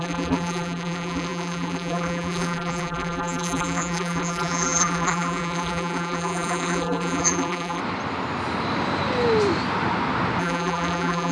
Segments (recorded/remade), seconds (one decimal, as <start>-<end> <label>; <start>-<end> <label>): 0.0-7.8 remade; 7.8-10.4 recorded; 10.4-11.3 remade